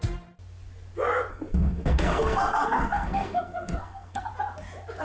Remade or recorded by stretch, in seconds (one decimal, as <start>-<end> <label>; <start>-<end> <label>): 0.0-1.3 recorded; 1.3-4.3 remade; 4.3-5.0 recorded